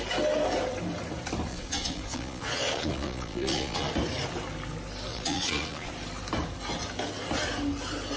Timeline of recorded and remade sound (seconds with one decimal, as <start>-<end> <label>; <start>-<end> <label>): 0.0-1.5 recorded; 1.5-3.9 remade; 3.9-5.1 recorded; 5.1-5.9 remade; 5.9-8.2 recorded